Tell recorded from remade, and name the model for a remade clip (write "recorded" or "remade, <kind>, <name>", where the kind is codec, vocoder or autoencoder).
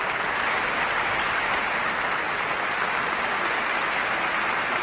recorded